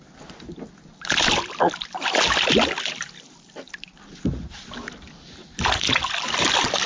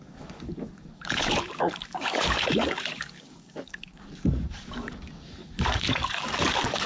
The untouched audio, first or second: first